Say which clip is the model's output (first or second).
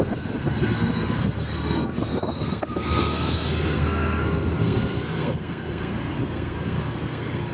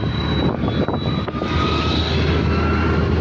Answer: first